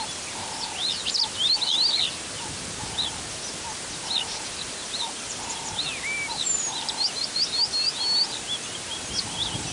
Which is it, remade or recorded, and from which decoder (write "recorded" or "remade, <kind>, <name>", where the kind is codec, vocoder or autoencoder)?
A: recorded